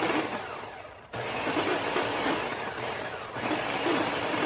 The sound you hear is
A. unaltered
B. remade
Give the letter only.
B